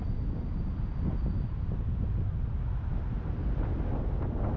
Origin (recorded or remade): recorded